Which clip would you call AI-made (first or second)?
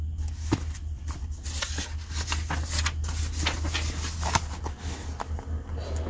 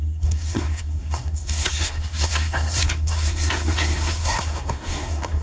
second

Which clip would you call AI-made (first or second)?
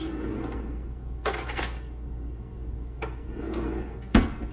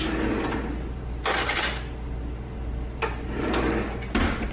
first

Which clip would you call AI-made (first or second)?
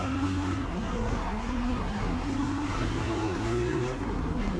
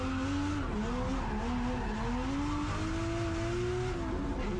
first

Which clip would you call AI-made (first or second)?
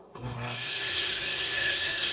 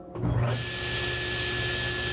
first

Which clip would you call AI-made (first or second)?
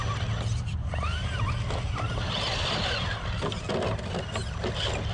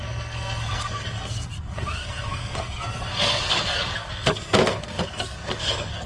second